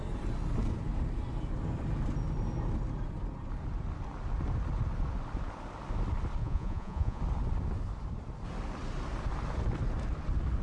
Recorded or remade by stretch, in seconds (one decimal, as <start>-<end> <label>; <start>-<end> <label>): 0.0-6.4 recorded; 6.4-7.2 remade; 7.2-10.6 recorded